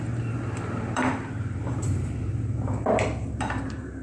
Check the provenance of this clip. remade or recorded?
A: remade